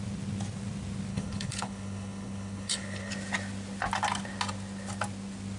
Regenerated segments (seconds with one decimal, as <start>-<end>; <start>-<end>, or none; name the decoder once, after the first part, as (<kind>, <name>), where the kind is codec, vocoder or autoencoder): 1.1-3.1 (codec, HILCodec)